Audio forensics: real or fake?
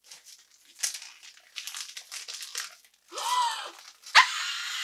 real